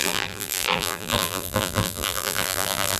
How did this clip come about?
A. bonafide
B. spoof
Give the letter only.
B